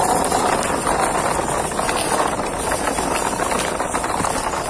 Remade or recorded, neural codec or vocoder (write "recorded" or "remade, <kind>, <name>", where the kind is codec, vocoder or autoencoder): recorded